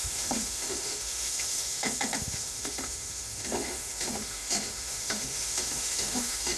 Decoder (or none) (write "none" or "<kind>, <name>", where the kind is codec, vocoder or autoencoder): autoencoder, DAC-VAE